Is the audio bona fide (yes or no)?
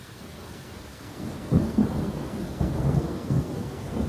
no